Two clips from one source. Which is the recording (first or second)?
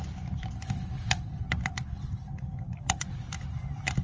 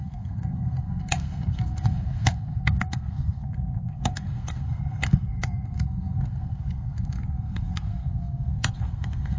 first